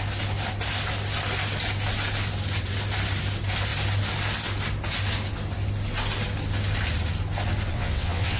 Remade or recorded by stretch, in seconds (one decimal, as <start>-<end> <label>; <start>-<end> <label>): 0.0-7.7 recorded; 7.7-8.4 remade